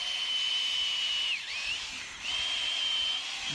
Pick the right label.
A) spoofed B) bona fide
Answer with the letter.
A